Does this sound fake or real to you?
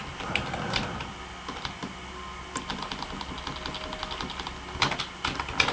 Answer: real